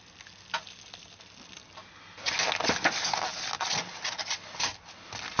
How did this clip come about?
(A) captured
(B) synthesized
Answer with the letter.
A